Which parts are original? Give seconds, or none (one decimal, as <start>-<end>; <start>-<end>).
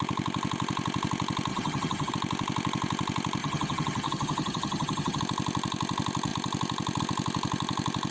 0.0-1.5; 2.1-3.4; 5.2-8.1